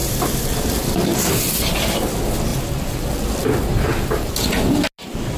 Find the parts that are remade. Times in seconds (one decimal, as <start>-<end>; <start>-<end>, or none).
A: 0.0-1.6; 2.5-3.4